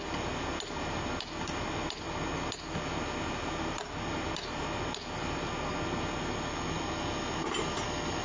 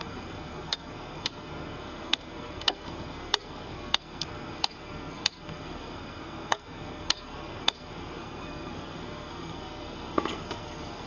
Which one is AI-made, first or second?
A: second